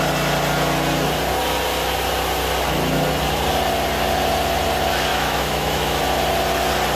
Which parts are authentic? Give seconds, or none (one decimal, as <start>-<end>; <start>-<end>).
0.0-5.1; 6.0-7.0